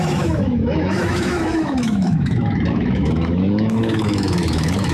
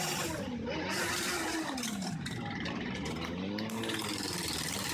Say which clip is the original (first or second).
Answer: second